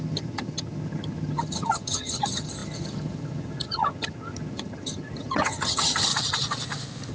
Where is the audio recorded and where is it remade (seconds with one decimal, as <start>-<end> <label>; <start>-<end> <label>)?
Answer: 0.0-6.1 remade; 6.1-7.1 recorded